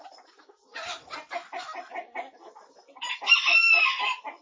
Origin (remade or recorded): recorded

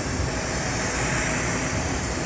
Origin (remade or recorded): remade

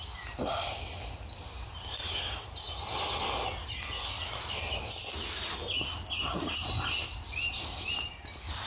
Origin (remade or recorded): recorded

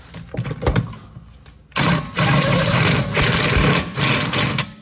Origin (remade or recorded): recorded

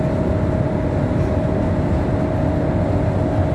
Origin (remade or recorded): recorded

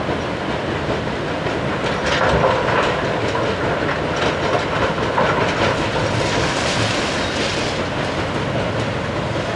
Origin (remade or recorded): recorded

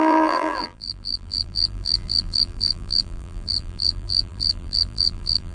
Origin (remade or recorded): remade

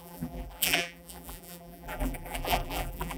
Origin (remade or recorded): remade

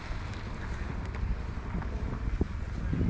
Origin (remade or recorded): recorded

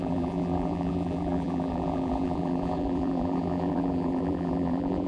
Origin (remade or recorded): remade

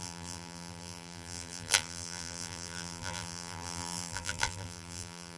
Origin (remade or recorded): remade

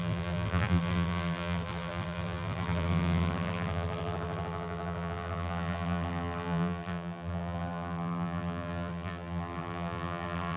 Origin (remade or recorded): remade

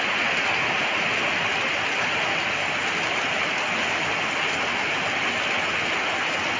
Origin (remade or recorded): recorded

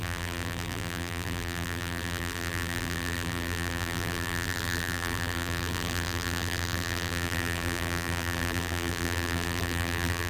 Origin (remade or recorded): remade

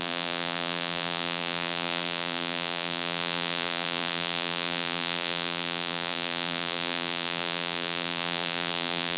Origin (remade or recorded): remade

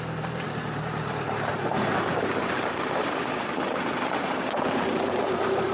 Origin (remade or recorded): remade